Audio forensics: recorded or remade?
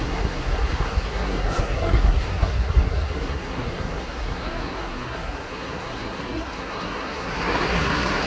remade